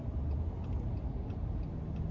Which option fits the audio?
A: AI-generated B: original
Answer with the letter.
B